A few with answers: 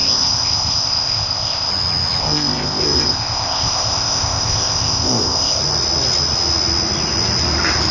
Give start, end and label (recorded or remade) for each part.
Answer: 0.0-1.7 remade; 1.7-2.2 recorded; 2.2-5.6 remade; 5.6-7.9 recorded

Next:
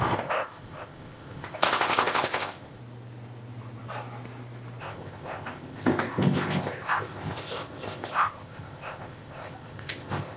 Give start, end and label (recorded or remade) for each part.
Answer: 0.0-2.8 remade; 2.8-4.8 recorded; 4.8-10.4 remade

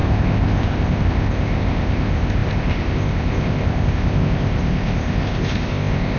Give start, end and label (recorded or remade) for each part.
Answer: 0.0-6.2 remade

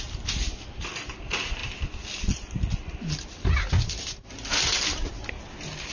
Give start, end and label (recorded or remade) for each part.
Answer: 0.0-5.9 recorded

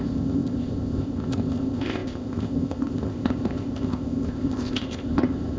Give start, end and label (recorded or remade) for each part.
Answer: 0.0-5.6 remade

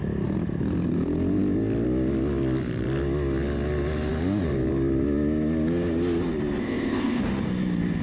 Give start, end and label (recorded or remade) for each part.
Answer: 0.0-6.6 recorded; 6.6-7.2 remade; 7.2-8.0 recorded